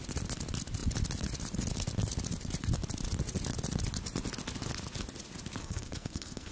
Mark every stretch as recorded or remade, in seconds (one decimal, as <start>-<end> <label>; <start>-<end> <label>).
0.0-5.6 recorded; 5.6-6.5 remade